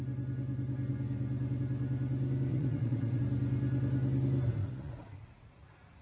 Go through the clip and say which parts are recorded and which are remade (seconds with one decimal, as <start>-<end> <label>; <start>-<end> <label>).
0.0-2.5 recorded; 2.5-3.2 remade; 3.2-4.6 recorded; 4.6-6.0 remade